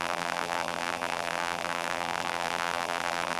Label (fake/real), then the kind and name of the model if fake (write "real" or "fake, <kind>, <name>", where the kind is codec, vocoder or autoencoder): fake, vocoder, BigVGAN v2